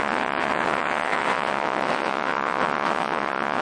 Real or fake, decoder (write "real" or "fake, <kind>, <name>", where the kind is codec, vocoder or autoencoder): fake, vocoder, WaveNeXt